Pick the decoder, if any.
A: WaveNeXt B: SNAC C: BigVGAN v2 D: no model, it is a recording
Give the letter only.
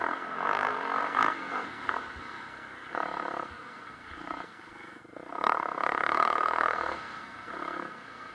B